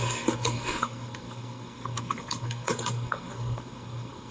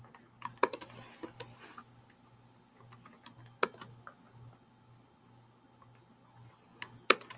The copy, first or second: first